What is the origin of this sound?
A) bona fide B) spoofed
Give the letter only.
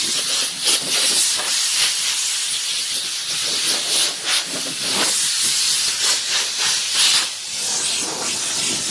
A